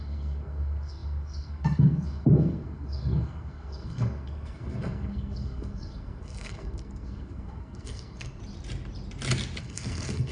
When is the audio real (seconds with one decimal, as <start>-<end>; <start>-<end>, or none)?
8.4-9.6